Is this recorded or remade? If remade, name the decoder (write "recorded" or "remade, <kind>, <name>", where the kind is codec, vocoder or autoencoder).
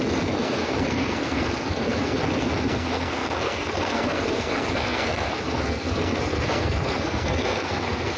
remade, codec, SNAC